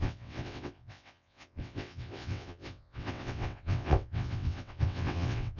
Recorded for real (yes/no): no